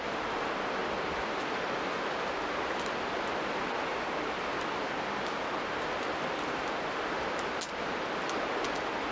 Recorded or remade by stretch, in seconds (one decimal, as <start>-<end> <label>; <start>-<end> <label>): 0.0-9.1 recorded